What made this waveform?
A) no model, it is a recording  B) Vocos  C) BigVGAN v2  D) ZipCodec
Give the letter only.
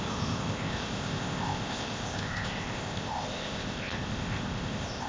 D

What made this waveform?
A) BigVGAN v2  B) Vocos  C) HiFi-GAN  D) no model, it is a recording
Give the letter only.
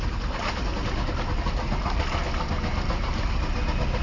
D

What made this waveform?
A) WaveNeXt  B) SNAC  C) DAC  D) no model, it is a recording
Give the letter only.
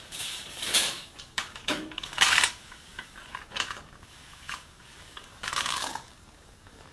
C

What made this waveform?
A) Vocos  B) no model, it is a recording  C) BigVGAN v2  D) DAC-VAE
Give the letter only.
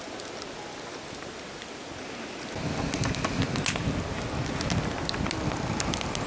B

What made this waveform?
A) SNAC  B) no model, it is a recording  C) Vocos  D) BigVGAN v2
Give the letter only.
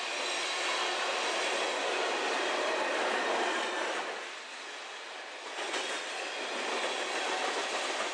B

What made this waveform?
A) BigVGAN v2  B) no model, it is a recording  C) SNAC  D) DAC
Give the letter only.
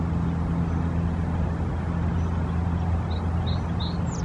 B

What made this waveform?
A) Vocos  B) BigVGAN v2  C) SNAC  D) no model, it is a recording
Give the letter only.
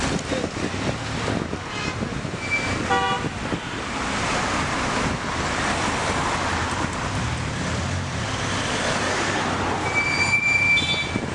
D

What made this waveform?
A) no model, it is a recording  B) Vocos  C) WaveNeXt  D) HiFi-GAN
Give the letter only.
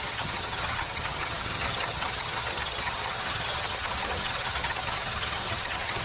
D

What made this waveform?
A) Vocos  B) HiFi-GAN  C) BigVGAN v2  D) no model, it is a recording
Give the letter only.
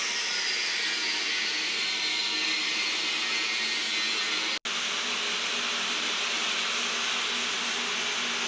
D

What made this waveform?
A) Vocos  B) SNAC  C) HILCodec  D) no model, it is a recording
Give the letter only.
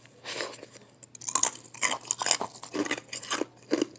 D